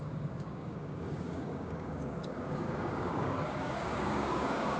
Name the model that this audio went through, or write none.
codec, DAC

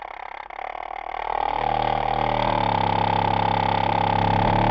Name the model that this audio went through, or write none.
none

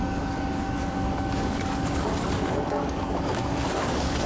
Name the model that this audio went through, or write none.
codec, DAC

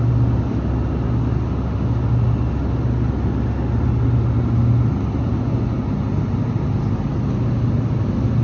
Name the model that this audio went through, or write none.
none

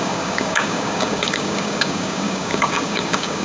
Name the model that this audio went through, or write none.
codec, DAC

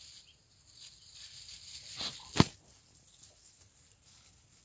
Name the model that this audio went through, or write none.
none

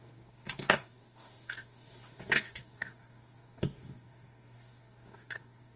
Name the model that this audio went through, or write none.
codec, DAC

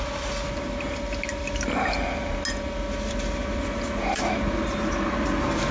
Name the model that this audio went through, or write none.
none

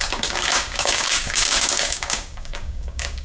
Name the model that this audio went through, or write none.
codec, DAC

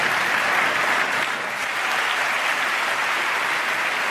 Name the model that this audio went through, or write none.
none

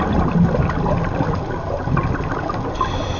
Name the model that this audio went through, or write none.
none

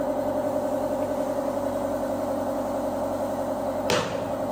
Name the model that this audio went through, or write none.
none